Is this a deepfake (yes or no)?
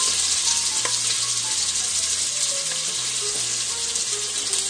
no